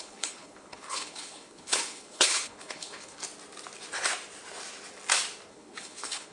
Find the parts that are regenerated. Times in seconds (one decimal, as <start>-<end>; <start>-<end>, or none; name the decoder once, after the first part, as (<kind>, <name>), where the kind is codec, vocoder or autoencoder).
0.0-3.2 (codec, HILCodec); 5.5-6.3